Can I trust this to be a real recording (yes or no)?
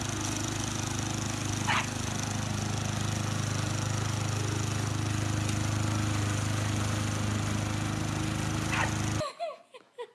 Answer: yes